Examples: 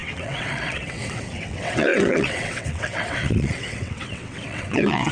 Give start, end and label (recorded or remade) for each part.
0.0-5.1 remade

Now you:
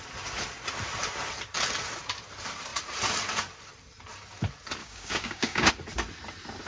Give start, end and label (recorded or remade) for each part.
0.0-4.8 recorded; 4.8-5.7 remade; 5.7-6.7 recorded

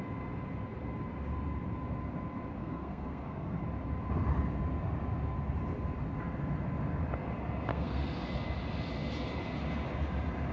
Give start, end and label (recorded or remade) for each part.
0.0-2.6 recorded; 2.6-3.6 remade; 3.6-7.7 recorded; 7.7-8.3 remade; 8.3-10.5 recorded

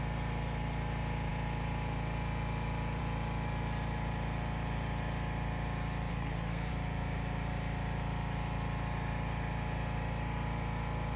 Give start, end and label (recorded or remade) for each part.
0.0-6.1 recorded; 6.1-6.7 remade; 6.7-11.2 recorded

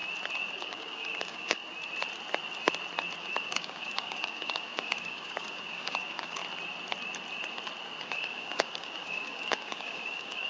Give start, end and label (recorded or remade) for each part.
0.0-0.5 recorded; 0.5-1.6 remade; 1.6-3.2 recorded; 3.2-6.4 remade; 6.4-8.0 recorded; 8.0-10.5 remade

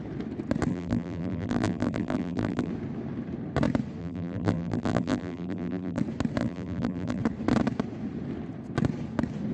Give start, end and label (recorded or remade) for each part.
0.0-0.7 recorded; 0.7-2.7 remade; 2.7-4.0 recorded; 4.0-6.0 remade; 6.0-6.4 recorded; 6.4-7.2 remade; 7.2-9.5 recorded

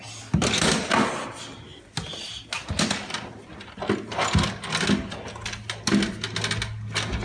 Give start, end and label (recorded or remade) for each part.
0.0-7.2 recorded

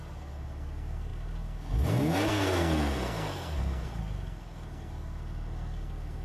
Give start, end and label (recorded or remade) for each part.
0.0-6.2 remade